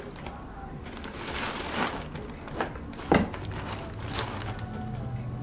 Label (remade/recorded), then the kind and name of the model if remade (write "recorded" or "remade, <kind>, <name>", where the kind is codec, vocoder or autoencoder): recorded